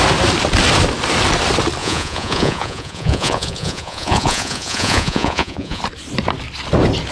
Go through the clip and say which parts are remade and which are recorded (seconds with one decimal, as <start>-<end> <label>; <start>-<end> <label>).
0.0-1.8 recorded; 1.8-5.8 remade; 5.8-7.1 recorded